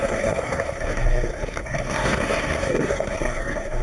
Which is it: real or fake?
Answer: fake